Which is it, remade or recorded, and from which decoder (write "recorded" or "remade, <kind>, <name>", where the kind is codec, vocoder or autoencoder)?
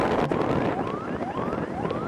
recorded